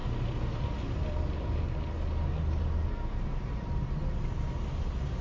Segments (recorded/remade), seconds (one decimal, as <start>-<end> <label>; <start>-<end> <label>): 0.0-3.1 recorded; 3.1-5.2 remade